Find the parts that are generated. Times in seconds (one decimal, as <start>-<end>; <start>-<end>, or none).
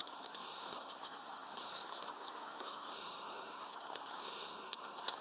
0.0-5.2